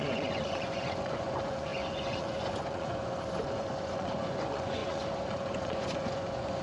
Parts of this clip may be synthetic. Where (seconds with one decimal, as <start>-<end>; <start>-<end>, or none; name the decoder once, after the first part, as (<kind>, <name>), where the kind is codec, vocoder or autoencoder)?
0.0-6.6 (vocoder, Vocos)